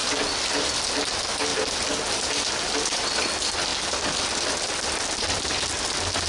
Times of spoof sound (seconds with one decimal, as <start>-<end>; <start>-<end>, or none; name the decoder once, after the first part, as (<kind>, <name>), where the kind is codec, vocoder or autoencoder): 0.0-0.8 (vocoder, BigVGAN v2); 1.5-3.2